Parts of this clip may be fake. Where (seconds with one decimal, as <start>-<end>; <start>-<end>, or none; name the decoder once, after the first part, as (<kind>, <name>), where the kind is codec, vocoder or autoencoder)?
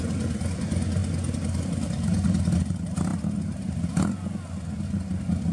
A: none